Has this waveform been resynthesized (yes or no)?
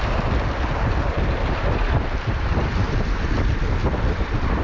yes